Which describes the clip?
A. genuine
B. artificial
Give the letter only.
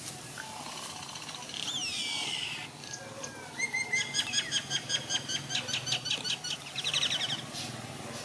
A